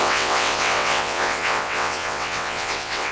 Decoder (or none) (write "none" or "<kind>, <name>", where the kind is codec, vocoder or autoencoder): vocoder, WaveNeXt